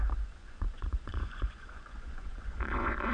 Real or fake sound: fake